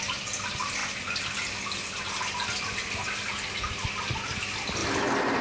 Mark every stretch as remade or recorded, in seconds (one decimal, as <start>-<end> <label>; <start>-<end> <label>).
0.0-0.8 remade; 0.8-4.0 recorded; 4.0-4.8 remade; 4.8-5.4 recorded